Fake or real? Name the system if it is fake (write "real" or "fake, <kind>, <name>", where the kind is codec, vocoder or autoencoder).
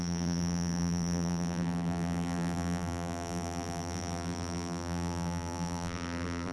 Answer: fake, vocoder, BigVGAN v2